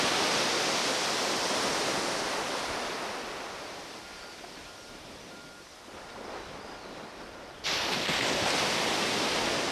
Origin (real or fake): fake